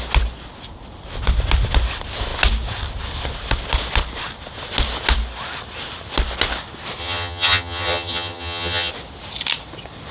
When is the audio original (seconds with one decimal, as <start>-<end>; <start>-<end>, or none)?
0.0-7.0; 8.9-10.1